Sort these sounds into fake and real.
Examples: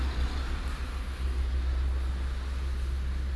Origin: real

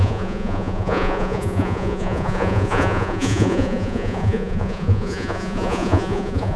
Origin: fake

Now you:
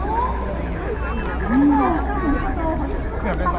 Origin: real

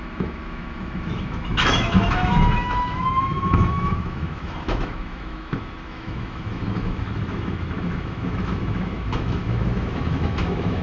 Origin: fake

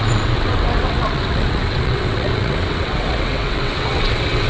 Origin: fake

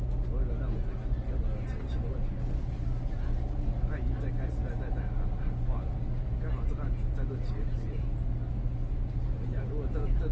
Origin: real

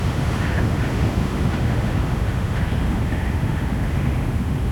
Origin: fake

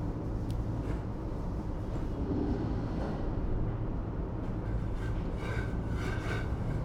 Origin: real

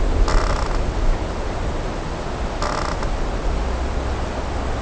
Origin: real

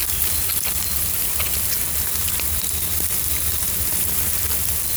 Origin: real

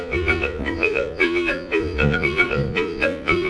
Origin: fake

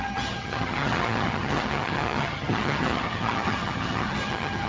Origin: fake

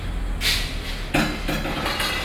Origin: real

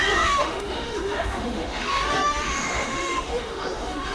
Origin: fake